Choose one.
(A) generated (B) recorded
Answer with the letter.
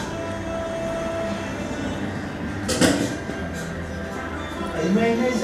B